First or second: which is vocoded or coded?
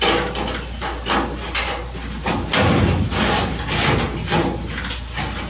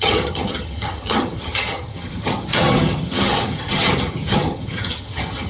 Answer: second